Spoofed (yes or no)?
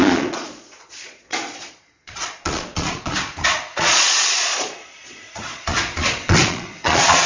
yes